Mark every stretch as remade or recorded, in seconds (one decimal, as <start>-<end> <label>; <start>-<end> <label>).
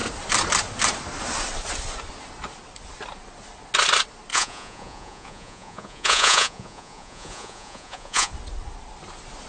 0.0-4.3 recorded; 4.3-8.3 remade; 8.3-9.5 recorded